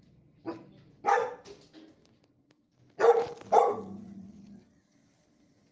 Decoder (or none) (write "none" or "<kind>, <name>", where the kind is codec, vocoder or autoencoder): none